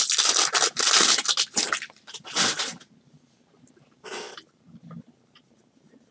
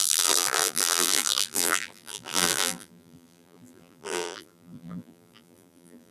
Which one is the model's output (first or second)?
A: second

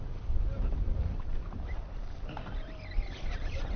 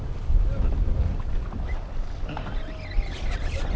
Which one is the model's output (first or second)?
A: first